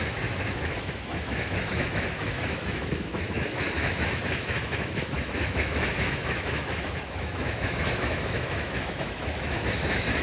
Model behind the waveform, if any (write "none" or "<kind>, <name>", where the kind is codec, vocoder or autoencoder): autoencoder, DAC-VAE